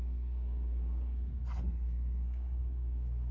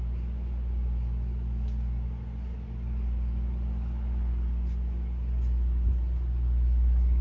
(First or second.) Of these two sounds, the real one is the second